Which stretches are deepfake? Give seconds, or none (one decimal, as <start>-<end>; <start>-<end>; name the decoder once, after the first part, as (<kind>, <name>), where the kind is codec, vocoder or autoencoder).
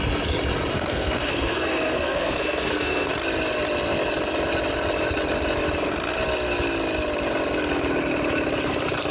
0.7-3.1 (codec, SNAC)